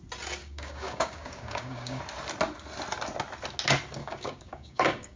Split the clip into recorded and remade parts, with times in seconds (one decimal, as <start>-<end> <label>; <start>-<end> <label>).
0.0-0.4 recorded; 0.4-2.0 remade; 2.0-4.0 recorded; 4.0-5.2 remade